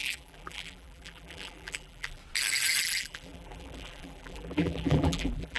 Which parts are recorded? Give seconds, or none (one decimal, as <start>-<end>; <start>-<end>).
2.2-2.8